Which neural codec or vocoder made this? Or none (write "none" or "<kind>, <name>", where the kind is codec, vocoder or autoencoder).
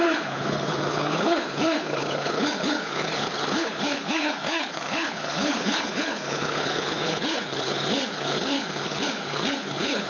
codec, HILCodec